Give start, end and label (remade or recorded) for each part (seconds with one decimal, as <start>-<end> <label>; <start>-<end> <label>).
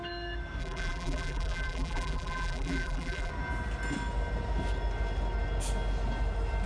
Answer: 0.0-0.6 recorded; 0.6-3.3 remade; 3.3-6.7 recorded